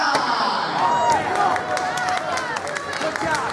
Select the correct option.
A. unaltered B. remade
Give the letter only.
A